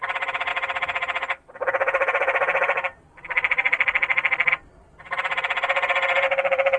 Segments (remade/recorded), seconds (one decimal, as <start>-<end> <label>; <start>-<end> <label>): 0.0-6.8 remade